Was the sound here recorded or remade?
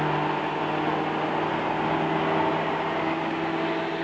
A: recorded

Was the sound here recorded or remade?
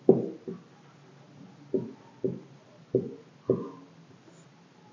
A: recorded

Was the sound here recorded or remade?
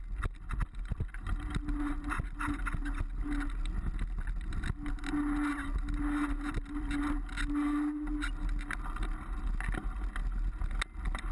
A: recorded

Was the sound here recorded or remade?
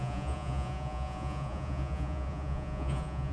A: remade